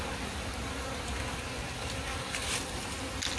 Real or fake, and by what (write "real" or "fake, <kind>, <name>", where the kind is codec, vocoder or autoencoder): real